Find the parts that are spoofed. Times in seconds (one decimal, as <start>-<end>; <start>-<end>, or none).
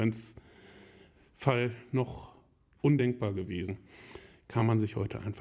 2.1-3.0